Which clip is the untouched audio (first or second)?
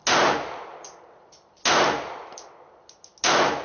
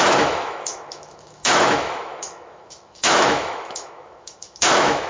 first